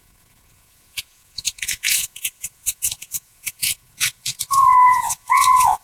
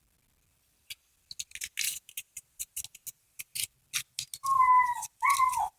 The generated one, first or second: first